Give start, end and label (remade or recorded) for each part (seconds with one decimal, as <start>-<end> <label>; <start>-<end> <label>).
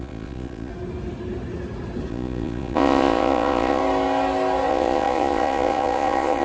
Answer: 0.0-0.7 remade; 0.7-2.1 recorded; 2.1-3.8 remade; 3.8-4.7 recorded; 4.7-6.4 remade